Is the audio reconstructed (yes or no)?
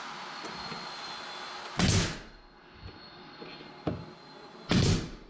no